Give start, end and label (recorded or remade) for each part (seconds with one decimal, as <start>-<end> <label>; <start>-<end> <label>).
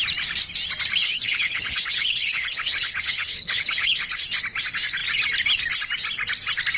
0.0-1.0 recorded; 1.0-4.2 remade; 4.2-6.8 recorded